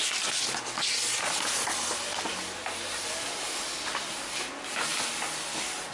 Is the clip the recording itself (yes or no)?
yes